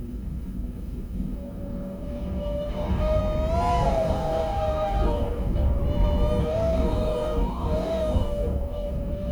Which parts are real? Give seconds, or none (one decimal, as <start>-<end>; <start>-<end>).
3.2-3.7; 5.8-6.4